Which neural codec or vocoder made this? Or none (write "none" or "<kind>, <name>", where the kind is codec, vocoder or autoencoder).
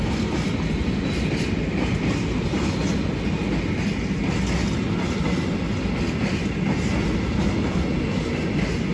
none